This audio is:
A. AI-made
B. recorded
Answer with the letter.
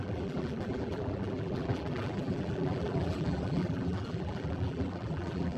A